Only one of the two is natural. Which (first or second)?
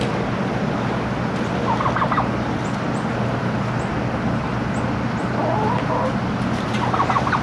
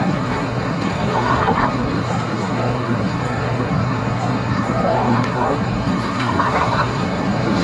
first